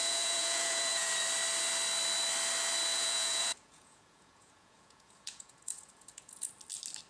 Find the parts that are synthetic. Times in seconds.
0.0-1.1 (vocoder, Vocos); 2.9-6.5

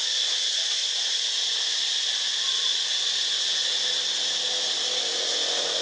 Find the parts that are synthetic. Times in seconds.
none